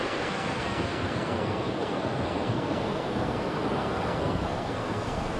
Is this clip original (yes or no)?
no